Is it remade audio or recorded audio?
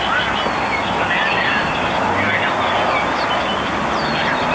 recorded